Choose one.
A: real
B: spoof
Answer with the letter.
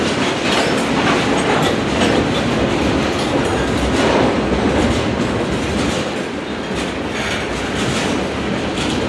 A